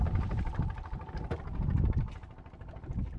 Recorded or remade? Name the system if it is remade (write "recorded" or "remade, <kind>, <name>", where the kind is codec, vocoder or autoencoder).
recorded